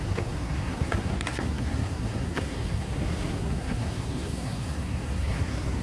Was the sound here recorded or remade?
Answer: remade